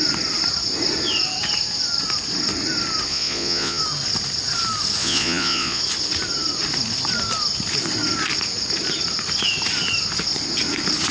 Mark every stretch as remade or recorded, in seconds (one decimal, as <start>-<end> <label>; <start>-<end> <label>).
0.0-3.1 recorded; 3.1-3.8 remade; 3.8-5.0 recorded; 5.0-5.8 remade; 5.8-11.1 recorded